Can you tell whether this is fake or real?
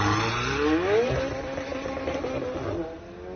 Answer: real